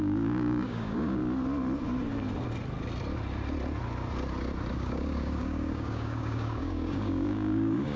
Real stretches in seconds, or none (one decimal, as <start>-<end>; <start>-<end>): 1.2-4.7